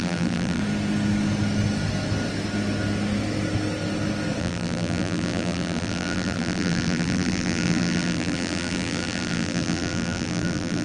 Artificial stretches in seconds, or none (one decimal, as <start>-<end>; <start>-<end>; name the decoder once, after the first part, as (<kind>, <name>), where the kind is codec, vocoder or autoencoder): 0.0-0.6 (vocoder, BigVGAN v2); 4.4-10.8